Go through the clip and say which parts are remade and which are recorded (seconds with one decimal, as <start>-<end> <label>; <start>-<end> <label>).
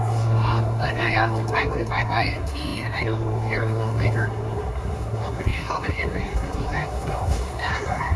0.0-8.2 remade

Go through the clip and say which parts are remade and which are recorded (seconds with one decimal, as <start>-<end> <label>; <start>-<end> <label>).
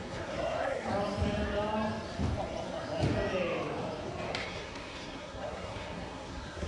0.0-0.9 remade; 0.9-4.3 recorded; 4.3-6.7 remade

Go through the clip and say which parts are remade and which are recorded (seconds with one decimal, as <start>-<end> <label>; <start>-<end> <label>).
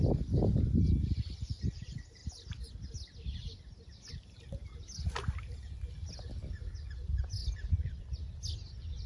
0.0-9.1 recorded